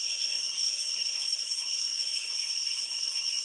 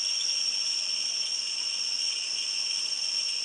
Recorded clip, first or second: second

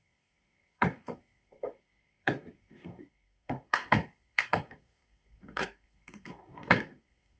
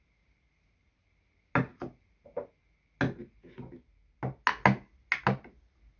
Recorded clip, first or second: second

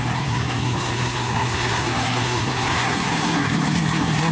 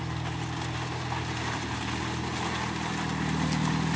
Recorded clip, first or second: second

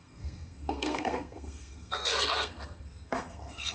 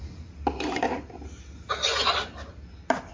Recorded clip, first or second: second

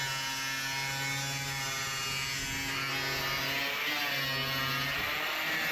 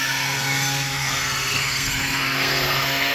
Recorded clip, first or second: first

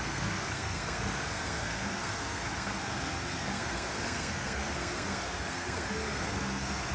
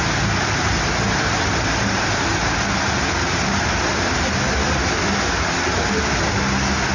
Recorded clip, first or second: second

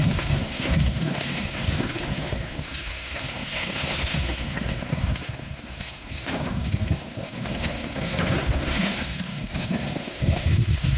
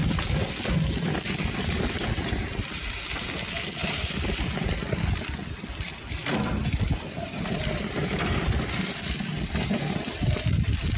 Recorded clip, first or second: second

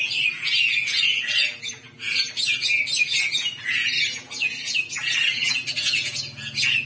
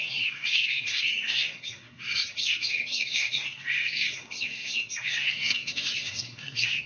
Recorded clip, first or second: first